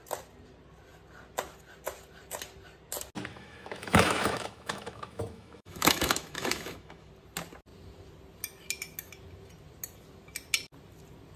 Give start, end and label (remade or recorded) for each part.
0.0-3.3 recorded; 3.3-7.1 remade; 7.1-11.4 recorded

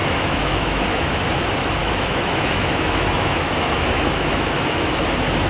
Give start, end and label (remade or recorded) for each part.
0.0-1.2 remade; 1.2-1.8 recorded; 1.8-4.9 remade; 4.9-5.5 recorded

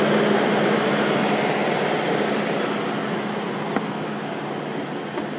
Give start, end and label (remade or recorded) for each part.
0.0-5.4 recorded